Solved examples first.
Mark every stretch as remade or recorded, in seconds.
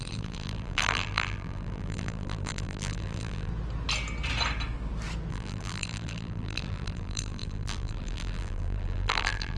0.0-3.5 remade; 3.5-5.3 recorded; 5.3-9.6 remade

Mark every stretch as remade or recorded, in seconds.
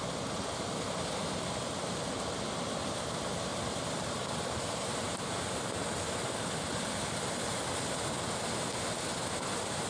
0.0-3.5 recorded; 3.5-7.7 remade; 7.7-9.9 recorded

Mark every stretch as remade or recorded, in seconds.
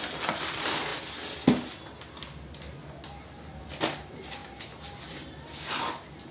0.0-6.3 recorded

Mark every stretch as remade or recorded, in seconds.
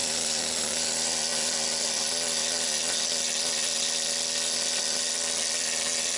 0.0-6.2 recorded